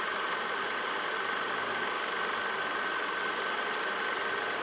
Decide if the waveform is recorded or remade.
recorded